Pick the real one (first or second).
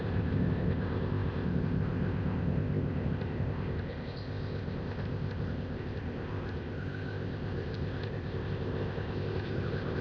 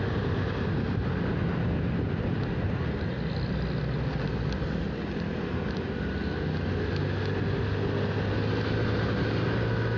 second